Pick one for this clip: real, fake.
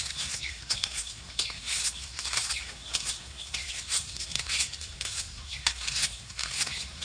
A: fake